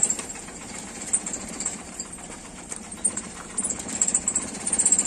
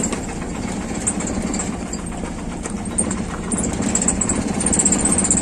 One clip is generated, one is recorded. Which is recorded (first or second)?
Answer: second